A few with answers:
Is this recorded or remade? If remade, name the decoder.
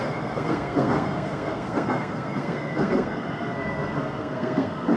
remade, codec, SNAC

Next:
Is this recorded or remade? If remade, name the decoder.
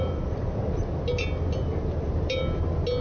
recorded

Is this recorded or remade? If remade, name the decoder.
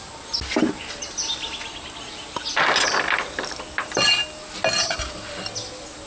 recorded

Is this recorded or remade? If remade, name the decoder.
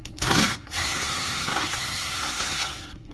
remade, codec, SNAC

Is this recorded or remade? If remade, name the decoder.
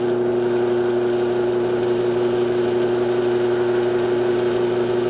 recorded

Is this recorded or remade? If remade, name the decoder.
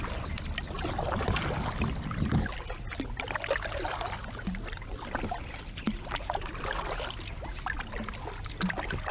recorded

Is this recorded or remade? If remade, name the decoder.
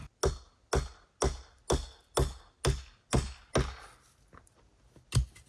recorded